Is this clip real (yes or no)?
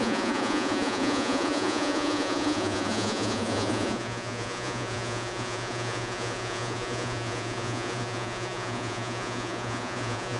no